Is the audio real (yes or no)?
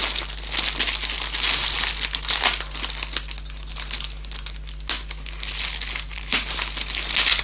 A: yes